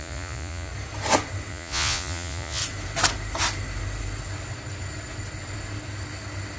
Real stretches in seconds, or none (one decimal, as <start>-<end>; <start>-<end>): 0.7-1.5; 2.6-6.6